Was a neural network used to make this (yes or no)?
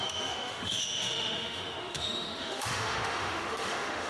yes